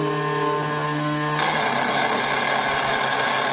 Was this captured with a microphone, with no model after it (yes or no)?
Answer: yes